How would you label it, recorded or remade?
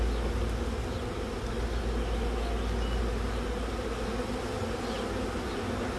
recorded